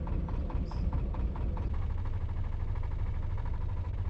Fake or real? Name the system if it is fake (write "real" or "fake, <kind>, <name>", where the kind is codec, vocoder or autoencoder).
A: real